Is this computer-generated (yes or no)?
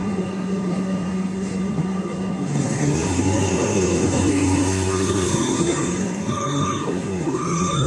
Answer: yes